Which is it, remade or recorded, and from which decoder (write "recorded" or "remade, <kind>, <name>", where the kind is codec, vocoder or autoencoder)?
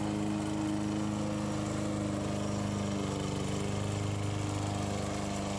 recorded